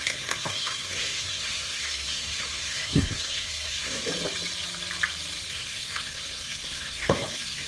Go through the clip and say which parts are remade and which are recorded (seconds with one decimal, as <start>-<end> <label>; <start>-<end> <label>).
0.0-4.1 remade; 4.1-5.5 recorded; 5.5-7.7 remade